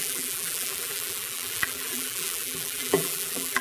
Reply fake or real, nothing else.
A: fake